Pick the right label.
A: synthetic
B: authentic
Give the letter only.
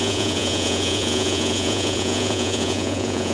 A